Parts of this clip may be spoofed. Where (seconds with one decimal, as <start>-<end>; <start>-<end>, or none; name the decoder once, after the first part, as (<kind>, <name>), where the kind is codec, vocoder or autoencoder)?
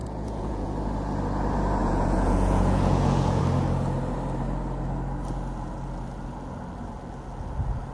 0.0-0.7 (vocoder, Vocos); 1.8-3.4